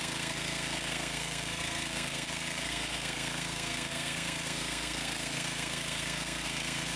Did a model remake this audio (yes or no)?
yes